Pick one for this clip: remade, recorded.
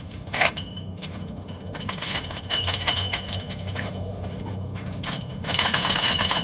remade